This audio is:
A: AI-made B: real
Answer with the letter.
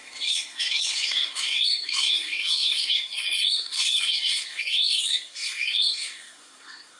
A